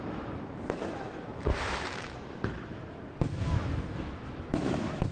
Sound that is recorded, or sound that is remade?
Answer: remade